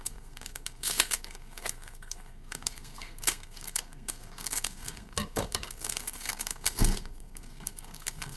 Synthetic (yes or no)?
yes